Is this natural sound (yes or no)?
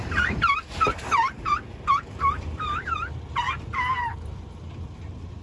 no